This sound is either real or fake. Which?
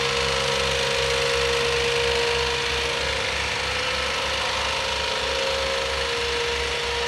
real